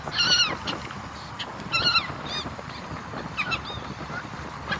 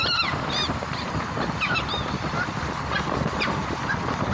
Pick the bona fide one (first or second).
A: first